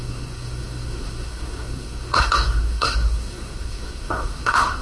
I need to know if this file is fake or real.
fake